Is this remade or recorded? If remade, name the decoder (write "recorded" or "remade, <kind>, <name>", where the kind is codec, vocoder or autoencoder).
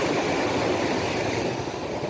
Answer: recorded